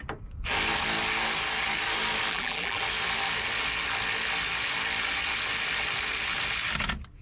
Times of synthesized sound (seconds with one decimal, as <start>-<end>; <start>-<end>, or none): 2.3-2.8